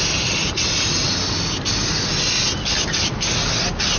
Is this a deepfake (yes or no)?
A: no